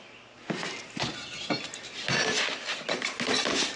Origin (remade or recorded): recorded